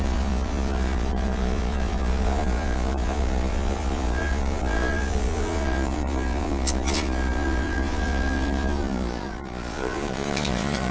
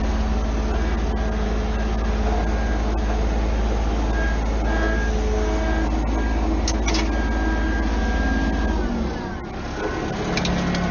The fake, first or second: first